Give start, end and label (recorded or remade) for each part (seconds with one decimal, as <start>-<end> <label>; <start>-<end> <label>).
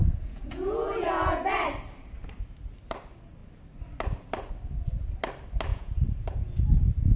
0.0-1.4 remade; 1.4-5.7 recorded; 5.7-6.6 remade; 6.6-7.2 recorded